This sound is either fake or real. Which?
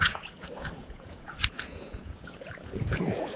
fake